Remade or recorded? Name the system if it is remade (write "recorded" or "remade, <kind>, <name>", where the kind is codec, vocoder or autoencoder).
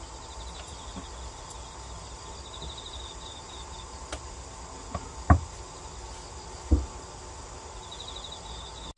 recorded